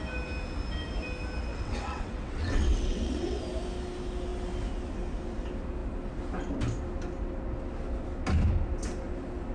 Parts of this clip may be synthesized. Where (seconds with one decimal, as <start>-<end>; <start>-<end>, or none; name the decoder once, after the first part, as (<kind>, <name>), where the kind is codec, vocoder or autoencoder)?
1.5-3.4 (vocoder, WaveNeXt)